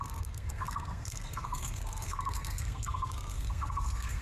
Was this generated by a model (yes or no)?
yes